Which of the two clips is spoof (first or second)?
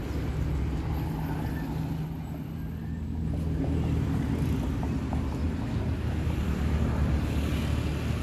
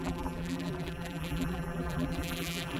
second